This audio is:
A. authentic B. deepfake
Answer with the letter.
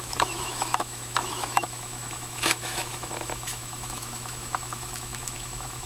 B